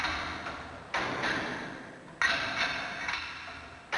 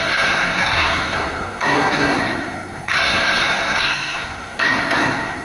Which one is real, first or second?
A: first